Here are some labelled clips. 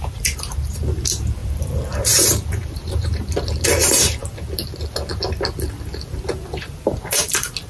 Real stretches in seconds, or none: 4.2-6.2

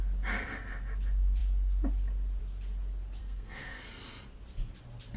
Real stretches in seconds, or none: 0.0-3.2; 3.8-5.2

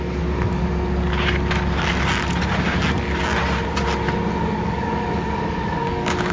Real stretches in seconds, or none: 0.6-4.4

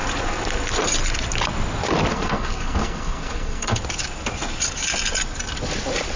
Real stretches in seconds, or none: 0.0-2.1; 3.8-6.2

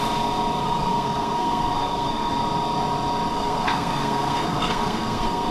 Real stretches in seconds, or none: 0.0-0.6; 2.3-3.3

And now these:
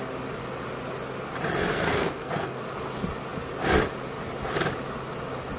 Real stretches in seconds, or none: 0.0-1.7; 2.6-5.6

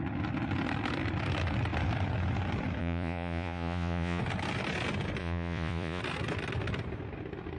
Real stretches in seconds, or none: 0.0-2.8; 4.2-5.2; 6.0-7.6